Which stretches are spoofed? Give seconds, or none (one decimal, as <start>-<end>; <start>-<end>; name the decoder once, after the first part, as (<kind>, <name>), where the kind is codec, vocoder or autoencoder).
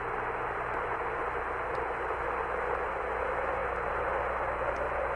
none